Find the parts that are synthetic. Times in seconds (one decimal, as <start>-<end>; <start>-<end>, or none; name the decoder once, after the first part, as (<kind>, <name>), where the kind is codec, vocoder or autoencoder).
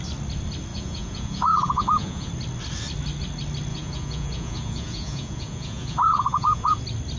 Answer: 0.7-2.3 (vocoder, Vocos); 3.7-6.8